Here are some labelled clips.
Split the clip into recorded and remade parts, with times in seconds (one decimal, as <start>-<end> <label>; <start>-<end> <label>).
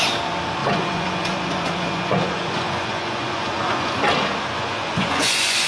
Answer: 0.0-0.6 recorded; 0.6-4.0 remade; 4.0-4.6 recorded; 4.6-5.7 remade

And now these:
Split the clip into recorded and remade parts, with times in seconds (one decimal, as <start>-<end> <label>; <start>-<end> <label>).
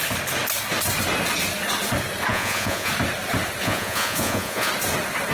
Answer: 0.0-2.3 recorded; 2.3-2.9 remade; 2.9-3.6 recorded; 3.6-4.7 remade; 4.7-5.3 recorded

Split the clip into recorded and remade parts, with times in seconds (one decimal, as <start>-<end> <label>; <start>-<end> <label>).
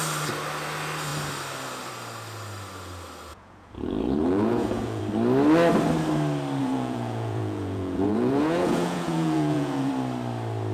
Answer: 0.0-3.3 recorded; 3.3-5.0 remade; 5.0-6.6 recorded; 6.6-9.9 remade; 9.9-10.7 recorded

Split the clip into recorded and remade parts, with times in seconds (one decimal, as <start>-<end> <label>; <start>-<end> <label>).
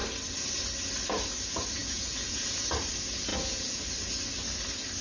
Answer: 0.0-1.8 recorded; 1.8-2.7 remade; 2.7-3.3 recorded; 3.3-3.8 remade; 3.8-5.0 recorded